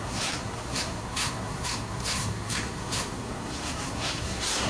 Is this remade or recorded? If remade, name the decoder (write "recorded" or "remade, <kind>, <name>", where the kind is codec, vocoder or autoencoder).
remade, codec, SNAC